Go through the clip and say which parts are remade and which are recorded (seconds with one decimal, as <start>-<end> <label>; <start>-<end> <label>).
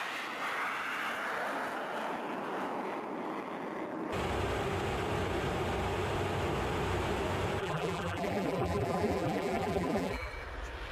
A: 0.0-7.6 recorded; 7.6-10.3 remade; 10.3-10.9 recorded